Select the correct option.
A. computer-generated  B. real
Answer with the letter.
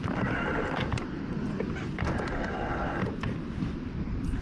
B